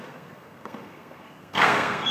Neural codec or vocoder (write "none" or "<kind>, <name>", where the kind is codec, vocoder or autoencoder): codec, SNAC